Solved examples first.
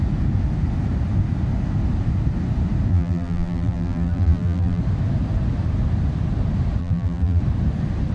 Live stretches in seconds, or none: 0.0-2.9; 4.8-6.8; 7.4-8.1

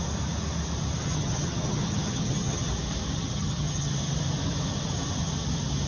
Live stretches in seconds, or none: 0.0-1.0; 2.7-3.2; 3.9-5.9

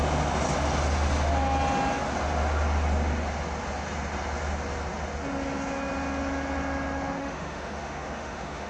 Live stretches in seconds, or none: 0.0-7.2

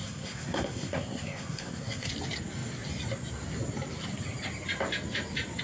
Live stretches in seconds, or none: 2.1-5.6

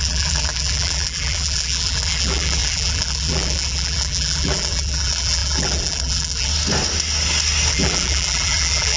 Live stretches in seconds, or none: 6.5-7.7

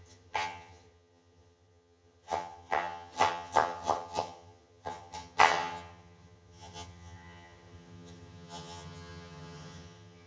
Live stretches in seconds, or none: none